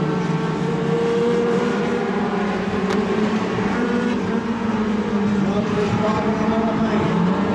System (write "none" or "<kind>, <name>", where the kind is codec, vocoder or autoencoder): vocoder, BigVGAN v2